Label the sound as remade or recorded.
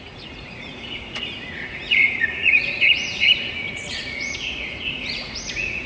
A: remade